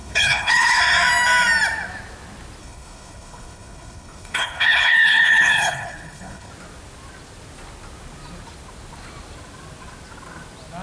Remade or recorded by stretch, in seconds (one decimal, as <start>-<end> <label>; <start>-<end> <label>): 0.0-0.8 remade; 0.8-2.6 recorded; 2.6-6.5 remade; 6.5-10.8 recorded